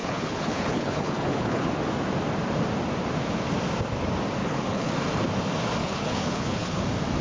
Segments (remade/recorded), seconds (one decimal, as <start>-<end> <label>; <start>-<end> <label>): 0.0-1.7 remade; 1.7-4.4 recorded; 4.4-4.9 remade; 4.9-5.8 recorded; 5.8-6.8 remade; 6.8-7.2 recorded